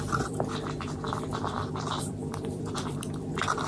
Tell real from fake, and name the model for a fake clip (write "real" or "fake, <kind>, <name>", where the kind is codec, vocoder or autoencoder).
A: fake, vocoder, BigVGAN v2